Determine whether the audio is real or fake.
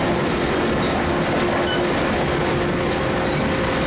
real